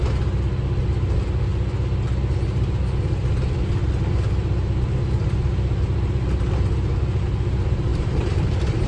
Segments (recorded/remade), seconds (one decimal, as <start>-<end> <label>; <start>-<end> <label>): 0.0-7.9 recorded; 7.9-8.9 remade